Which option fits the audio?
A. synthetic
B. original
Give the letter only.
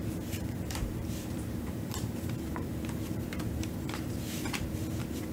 A